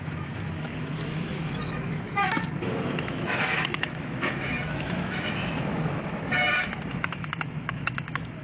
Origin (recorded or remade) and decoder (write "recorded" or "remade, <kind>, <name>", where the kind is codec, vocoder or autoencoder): remade, autoencoder, DAC-VAE